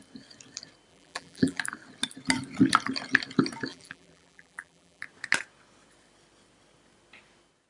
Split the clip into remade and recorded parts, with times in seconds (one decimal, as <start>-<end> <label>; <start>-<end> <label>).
0.0-0.9 recorded; 0.9-1.6 remade; 1.6-3.7 recorded; 3.7-5.0 remade; 5.0-7.7 recorded